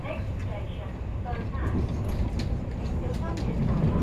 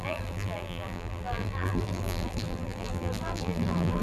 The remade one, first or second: second